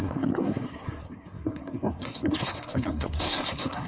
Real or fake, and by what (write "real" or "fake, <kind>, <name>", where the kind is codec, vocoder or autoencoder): fake, codec, SNAC